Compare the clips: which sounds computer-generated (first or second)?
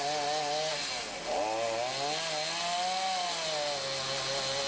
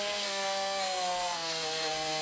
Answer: second